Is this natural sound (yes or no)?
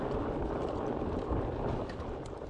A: yes